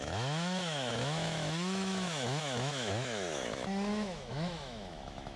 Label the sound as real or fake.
fake